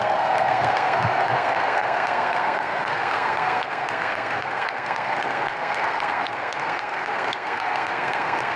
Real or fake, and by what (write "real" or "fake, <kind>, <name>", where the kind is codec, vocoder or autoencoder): fake, codec, SNAC